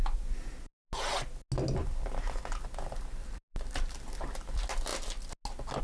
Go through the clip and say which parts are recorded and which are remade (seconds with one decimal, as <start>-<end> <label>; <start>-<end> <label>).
0.0-5.8 recorded